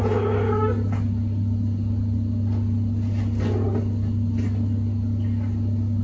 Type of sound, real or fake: real